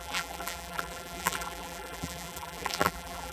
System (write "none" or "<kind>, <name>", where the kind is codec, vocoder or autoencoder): vocoder, BigVGAN v2